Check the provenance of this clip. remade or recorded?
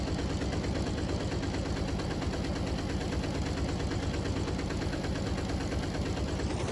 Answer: recorded